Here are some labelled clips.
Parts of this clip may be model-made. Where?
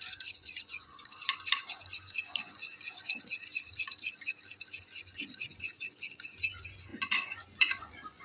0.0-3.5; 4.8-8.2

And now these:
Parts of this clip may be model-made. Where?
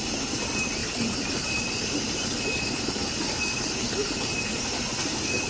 none